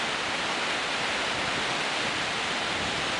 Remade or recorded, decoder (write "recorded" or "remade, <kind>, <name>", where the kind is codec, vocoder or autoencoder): recorded